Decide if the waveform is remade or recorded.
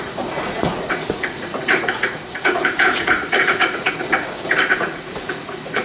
remade